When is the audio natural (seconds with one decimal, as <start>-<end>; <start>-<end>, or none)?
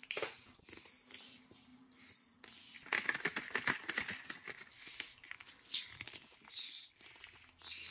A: 0.0-7.9